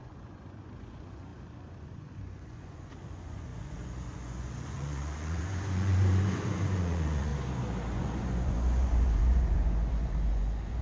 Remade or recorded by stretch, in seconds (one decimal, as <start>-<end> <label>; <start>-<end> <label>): 0.0-7.3 remade; 7.3-7.9 recorded; 7.9-10.8 remade